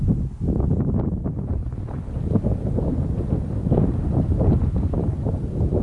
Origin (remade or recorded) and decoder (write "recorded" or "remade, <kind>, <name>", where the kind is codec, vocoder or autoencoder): recorded